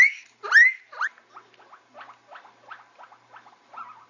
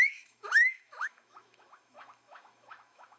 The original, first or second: first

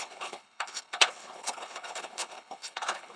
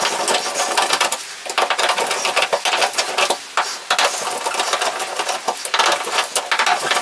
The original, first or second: second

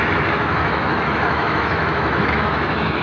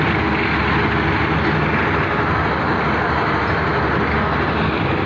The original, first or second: second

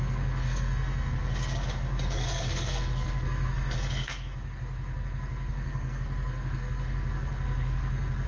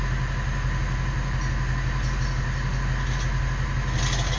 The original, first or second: second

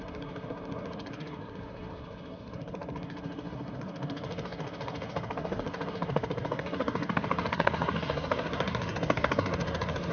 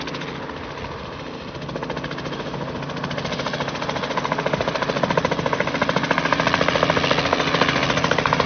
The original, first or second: second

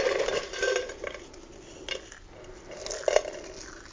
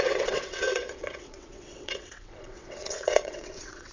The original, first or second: first